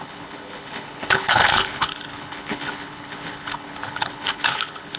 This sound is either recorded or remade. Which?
remade